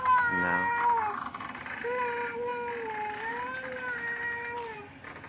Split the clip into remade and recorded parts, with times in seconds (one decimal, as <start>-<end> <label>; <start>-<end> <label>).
0.0-5.3 recorded